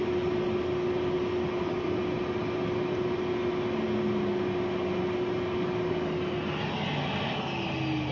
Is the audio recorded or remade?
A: recorded